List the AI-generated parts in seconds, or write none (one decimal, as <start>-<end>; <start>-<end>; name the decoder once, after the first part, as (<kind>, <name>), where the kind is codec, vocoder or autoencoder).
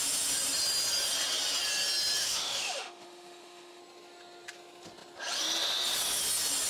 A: 2.2-3.8 (autoencoder, DAC-VAE)